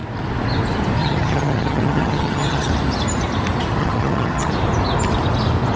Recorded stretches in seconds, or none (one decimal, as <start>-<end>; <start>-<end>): 0.0-1.0; 2.7-3.8; 4.5-5.8